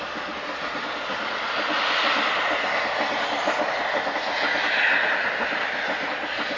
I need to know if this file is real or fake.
real